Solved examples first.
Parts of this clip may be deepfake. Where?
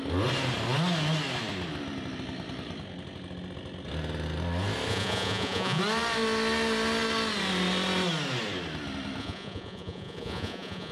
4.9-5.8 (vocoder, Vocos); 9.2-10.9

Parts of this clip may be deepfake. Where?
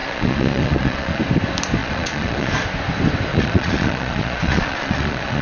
0.0-1.2 (vocoder, Vocos); 1.8-2.5; 3.3-5.4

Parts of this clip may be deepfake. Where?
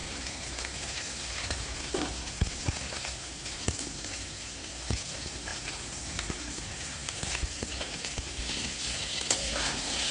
0.0-10.1 (codec, SNAC)